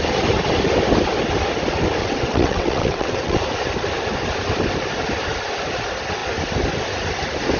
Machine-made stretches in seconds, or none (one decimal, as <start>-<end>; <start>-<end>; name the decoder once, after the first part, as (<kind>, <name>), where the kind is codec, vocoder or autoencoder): 2.0-3.4 (vocoder, WaveNeXt)